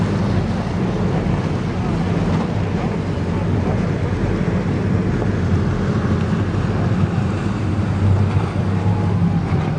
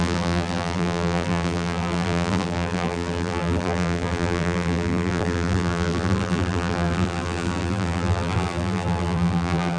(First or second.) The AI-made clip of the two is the second